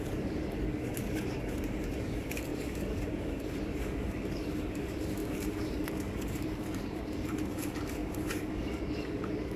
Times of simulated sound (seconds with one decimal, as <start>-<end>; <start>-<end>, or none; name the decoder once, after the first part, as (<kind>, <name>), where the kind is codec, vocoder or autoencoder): 0.0-9.6 (codec, DAC)